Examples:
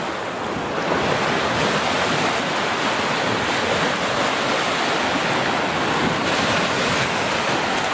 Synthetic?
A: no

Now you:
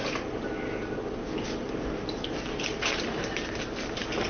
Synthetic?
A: no